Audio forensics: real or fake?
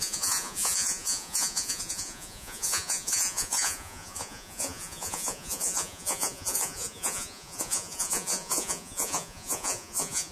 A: fake